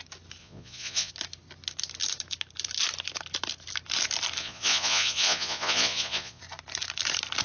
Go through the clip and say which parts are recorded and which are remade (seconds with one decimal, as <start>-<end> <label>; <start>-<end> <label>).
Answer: 0.0-0.4 recorded; 0.4-1.1 remade; 1.1-4.4 recorded; 4.4-6.4 remade; 6.4-7.4 recorded